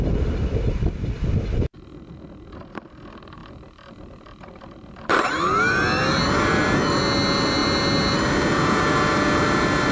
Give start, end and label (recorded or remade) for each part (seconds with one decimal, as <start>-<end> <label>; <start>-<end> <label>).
0.0-9.9 recorded